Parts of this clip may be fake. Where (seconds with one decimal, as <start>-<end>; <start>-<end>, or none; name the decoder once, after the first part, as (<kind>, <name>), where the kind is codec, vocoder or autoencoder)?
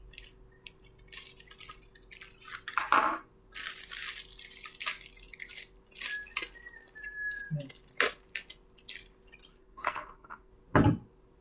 9.5-10.5 (codec, SNAC)